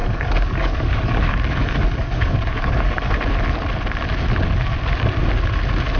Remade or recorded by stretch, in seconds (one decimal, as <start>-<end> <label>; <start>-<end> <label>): 0.0-3.1 remade; 3.1-6.0 recorded